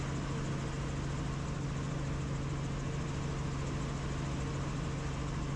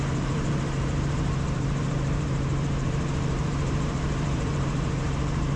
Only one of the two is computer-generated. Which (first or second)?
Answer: second